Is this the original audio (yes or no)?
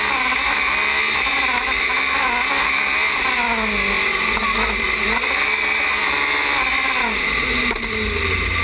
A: yes